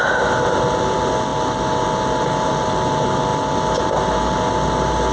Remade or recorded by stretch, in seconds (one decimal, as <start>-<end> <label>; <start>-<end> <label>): 0.0-5.1 recorded